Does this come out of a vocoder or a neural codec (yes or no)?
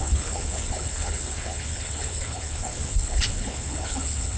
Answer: yes